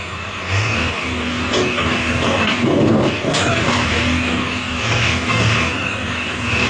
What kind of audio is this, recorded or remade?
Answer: remade